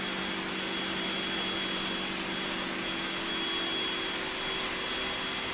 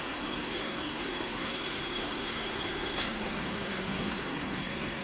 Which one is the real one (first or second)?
first